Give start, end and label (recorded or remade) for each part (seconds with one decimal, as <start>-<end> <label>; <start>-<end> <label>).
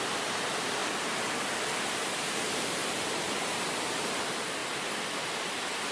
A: 0.0-0.8 remade; 0.8-2.1 recorded; 2.1-4.6 remade; 4.6-5.9 recorded